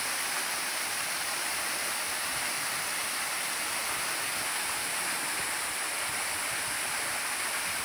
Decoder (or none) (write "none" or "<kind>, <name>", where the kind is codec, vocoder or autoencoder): none